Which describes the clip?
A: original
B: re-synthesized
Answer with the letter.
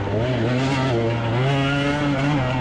A